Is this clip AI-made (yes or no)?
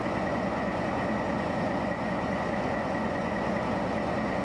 yes